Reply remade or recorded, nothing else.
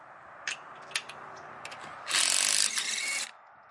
recorded